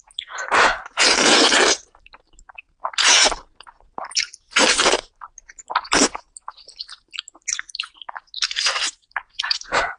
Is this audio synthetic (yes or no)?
no